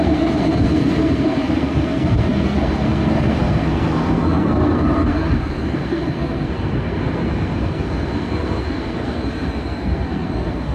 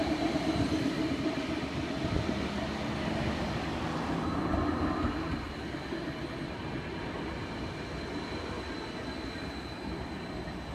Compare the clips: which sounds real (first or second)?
second